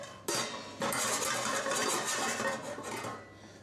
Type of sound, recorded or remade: recorded